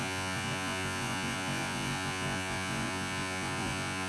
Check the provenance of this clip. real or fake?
fake